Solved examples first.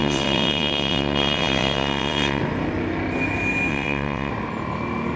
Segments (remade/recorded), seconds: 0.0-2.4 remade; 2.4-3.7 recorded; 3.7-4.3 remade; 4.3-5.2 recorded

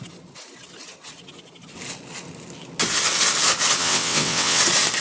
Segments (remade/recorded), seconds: 0.0-3.8 recorded; 3.8-4.6 remade; 4.6-5.0 recorded

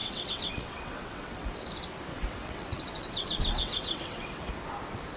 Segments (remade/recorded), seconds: 0.0-1.5 remade; 1.5-2.1 recorded; 2.1-4.5 remade; 4.5-5.2 recorded

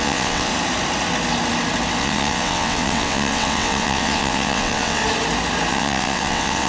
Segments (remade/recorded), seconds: 0.0-0.5 remade; 0.5-2.0 recorded; 2.0-5.0 remade; 5.0-5.7 recorded; 5.7-6.7 remade

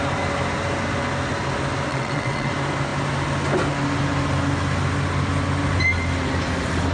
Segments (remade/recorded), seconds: 0.0-1.9 recorded; 1.9-2.5 remade; 2.5-6.9 recorded

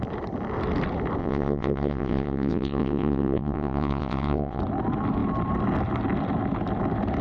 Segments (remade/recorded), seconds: 0.0-1.2 recorded; 1.2-4.6 remade; 4.6-7.2 recorded

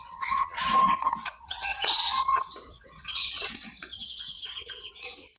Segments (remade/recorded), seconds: 0.0-5.4 remade